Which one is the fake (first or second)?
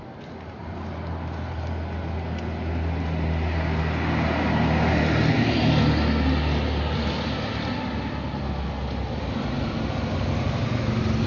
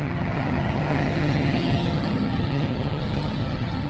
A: second